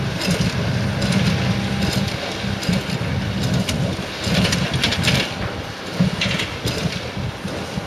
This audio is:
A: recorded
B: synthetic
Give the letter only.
A